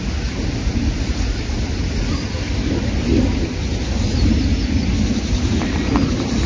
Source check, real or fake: real